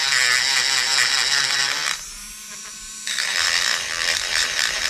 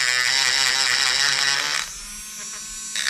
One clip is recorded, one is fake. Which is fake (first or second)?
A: first